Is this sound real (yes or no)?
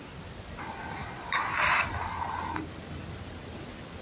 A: yes